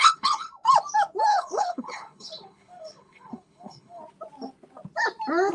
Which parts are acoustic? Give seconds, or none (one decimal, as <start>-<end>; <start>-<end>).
0.5-1.3; 4.0-5.5